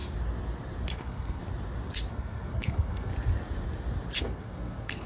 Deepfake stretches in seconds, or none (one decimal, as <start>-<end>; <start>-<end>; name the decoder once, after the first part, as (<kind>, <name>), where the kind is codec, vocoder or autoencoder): 0.9-1.4 (codec, SNAC); 2.1-3.1; 4.2-5.1